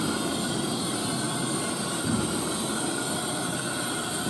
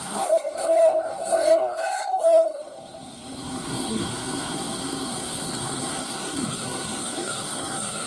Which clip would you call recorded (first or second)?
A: first